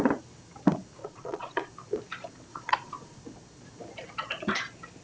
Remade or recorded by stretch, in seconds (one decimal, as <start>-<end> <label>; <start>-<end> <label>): 0.0-1.0 recorded; 1.0-1.7 remade; 1.7-2.5 recorded; 2.5-3.2 remade; 3.2-5.0 recorded